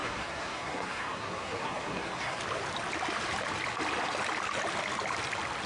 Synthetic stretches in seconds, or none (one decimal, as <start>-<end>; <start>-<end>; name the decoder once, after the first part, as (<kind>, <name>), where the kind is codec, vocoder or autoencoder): 0.0-2.4 (codec, SNAC)